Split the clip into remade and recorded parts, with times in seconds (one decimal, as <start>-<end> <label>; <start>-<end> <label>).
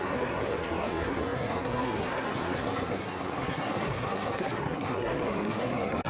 0.0-6.1 remade